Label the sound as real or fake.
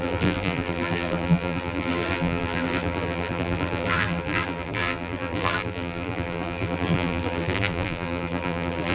fake